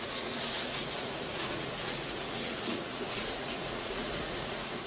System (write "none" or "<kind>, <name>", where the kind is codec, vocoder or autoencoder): vocoder, Vocos